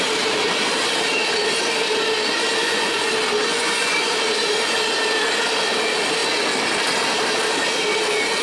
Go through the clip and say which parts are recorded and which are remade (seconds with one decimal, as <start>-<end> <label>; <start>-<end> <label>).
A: 0.0-2.6 recorded; 2.6-3.1 remade; 3.1-3.5 recorded; 3.5-4.1 remade; 4.1-8.4 recorded